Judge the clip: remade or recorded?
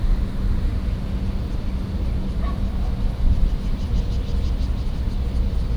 recorded